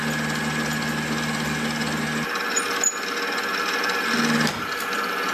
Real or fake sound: real